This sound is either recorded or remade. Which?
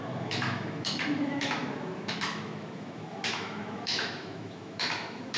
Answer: remade